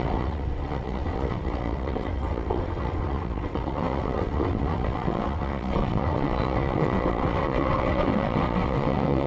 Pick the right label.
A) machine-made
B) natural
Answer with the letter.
A